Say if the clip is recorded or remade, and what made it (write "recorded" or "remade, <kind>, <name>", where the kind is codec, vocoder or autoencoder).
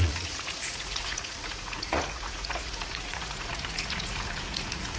remade, vocoder, Vocos